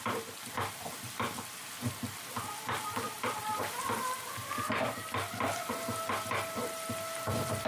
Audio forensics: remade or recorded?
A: recorded